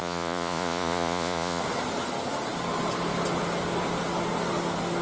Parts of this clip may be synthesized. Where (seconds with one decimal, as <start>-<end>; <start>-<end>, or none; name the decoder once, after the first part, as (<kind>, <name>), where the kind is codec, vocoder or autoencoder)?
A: 0.0-1.6 (vocoder, Vocos)